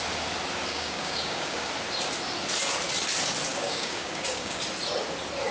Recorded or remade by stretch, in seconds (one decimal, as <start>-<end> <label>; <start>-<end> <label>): 0.0-0.7 recorded; 0.7-1.7 remade; 1.7-3.5 recorded; 3.5-4.6 remade; 4.6-5.5 recorded